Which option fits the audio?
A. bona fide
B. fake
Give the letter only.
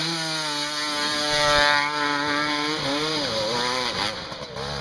A